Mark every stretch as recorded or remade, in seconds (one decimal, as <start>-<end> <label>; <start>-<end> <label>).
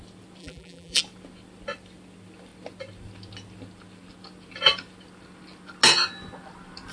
0.0-0.4 recorded; 0.4-1.0 remade; 1.0-6.9 recorded